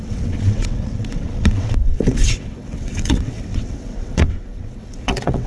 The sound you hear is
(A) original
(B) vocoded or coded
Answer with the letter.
B